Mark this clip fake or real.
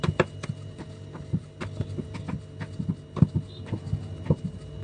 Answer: real